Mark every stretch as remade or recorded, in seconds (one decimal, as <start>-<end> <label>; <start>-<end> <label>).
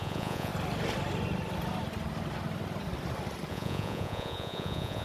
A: 0.0-0.5 remade; 0.5-3.5 recorded; 3.5-5.0 remade